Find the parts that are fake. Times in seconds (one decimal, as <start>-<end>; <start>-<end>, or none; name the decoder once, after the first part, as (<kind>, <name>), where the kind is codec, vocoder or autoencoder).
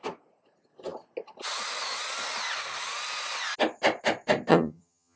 4.5-5.2 (vocoder, HiFi-GAN)